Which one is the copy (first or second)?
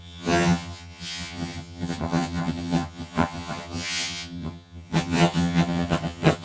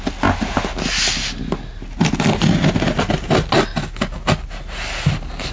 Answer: first